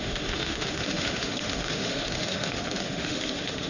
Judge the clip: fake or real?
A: fake